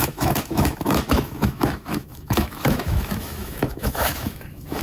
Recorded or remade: remade